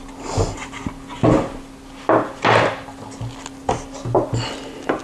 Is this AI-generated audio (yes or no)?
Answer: no